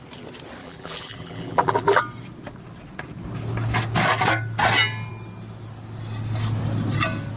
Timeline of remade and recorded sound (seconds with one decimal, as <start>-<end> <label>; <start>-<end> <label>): 0.0-0.6 recorded; 0.6-2.0 remade; 2.0-7.4 recorded